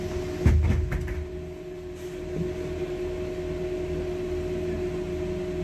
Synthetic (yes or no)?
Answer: no